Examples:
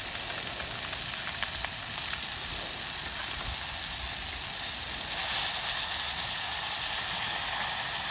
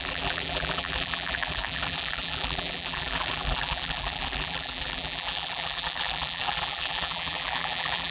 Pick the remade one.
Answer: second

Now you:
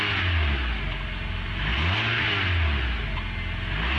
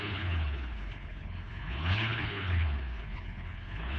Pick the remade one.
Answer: second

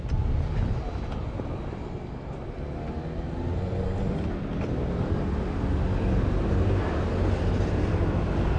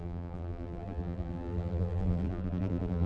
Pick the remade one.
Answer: second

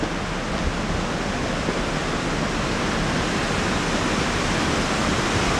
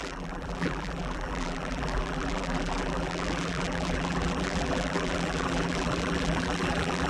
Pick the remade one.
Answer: second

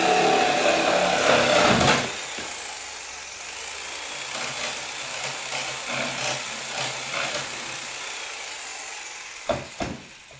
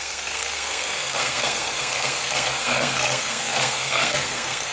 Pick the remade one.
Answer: second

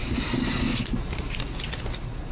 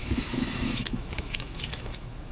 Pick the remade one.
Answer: second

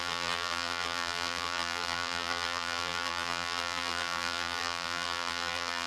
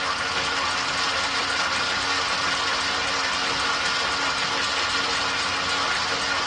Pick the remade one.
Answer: first